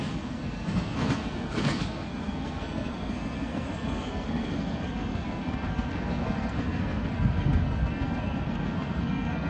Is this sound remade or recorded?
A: remade